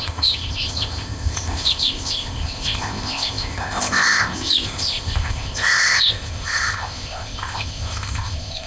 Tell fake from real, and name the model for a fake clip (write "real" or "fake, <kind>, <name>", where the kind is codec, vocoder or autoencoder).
fake, codec, ZipCodec